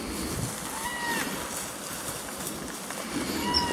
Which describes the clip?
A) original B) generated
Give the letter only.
A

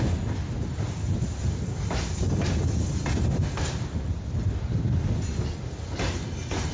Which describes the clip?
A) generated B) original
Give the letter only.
B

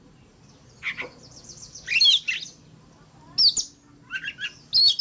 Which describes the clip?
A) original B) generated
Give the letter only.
A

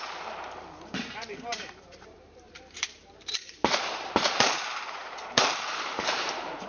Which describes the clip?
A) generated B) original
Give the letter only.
A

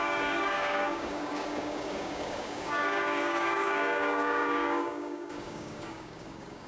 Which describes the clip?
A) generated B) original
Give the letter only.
A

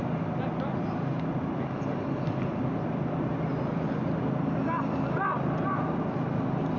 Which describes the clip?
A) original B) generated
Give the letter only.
A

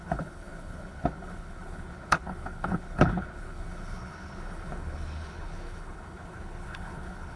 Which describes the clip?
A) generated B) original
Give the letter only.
A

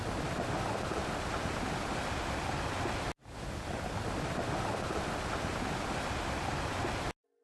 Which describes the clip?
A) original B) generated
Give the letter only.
A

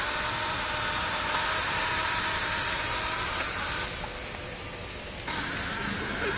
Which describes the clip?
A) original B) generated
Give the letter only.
A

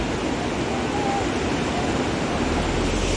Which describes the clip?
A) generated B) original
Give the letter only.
B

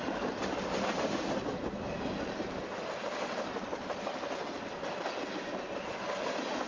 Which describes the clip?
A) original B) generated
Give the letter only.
A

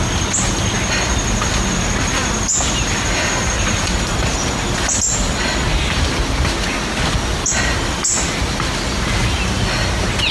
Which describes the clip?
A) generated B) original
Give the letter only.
B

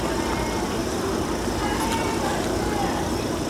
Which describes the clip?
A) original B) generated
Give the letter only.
A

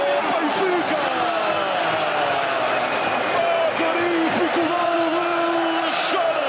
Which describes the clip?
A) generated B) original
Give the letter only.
B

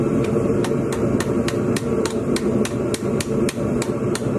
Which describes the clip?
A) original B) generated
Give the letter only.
A